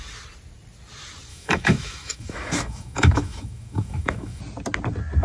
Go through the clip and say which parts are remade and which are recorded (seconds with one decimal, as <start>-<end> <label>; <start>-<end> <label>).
0.0-1.3 recorded; 1.3-4.4 remade; 4.4-5.2 recorded